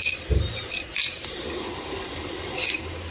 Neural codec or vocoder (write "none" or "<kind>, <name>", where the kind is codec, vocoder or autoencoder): vocoder, BigVGAN v2